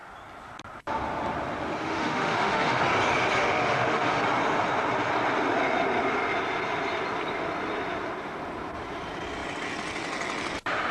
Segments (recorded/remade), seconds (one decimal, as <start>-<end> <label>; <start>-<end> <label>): 0.0-1.8 recorded; 1.8-2.8 remade; 2.8-3.4 recorded; 3.4-4.2 remade; 4.2-10.9 recorded